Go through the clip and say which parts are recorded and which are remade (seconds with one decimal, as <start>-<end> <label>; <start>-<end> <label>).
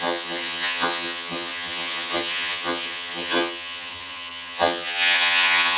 0.0-5.8 remade